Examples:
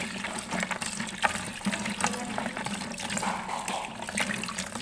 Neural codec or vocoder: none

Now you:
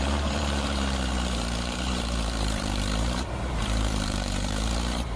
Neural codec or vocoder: vocoder, BigVGAN v2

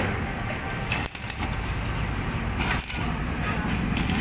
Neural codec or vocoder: vocoder, BigVGAN v2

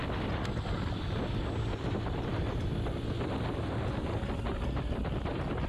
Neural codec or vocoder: none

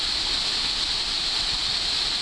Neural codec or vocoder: none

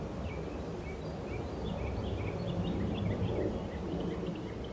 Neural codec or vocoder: none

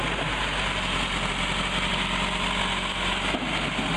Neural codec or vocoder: none